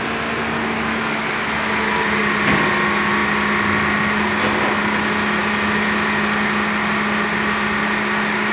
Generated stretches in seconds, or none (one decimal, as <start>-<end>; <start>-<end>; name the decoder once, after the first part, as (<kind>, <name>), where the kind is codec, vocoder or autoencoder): none

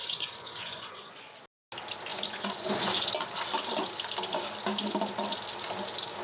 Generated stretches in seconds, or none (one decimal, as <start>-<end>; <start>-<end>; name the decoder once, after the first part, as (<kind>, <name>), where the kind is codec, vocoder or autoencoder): 0.0-1.3 (vocoder, Vocos); 2.1-3.1

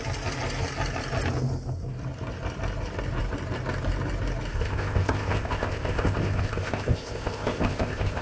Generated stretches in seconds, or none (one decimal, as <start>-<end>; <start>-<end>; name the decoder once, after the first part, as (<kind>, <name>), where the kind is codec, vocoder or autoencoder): 4.5-8.2 (codec, ZipCodec)